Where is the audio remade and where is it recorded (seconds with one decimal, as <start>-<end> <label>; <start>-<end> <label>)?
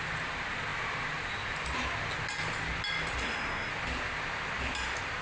0.0-3.2 recorded; 3.2-3.7 remade; 3.7-5.2 recorded